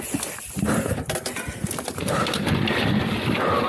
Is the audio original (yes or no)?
yes